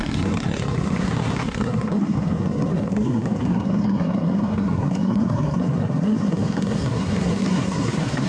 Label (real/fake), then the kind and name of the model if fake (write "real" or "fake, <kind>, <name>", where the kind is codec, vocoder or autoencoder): fake, codec, SNAC